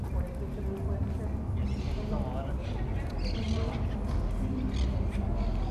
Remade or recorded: recorded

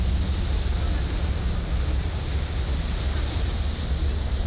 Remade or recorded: recorded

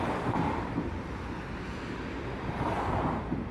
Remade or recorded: recorded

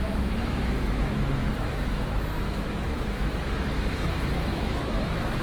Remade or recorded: remade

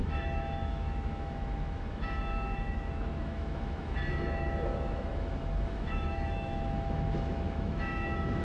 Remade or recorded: remade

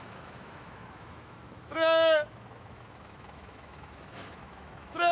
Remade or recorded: remade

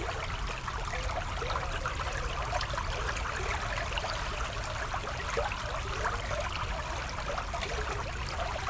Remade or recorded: recorded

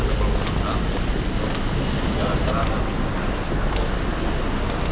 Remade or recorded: recorded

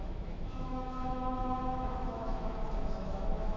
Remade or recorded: remade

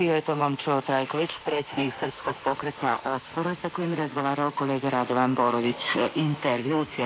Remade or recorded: remade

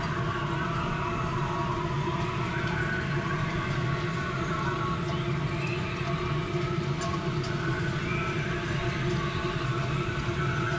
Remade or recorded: recorded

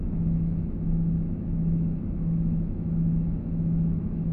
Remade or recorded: remade